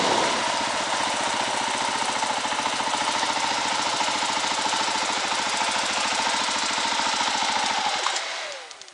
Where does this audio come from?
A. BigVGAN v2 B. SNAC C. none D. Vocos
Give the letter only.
C